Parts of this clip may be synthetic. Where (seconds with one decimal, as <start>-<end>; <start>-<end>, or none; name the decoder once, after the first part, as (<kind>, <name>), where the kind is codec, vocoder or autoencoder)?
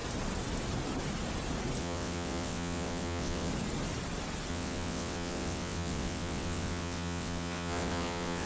1.8-3.5 (vocoder, WaveNeXt); 4.5-8.4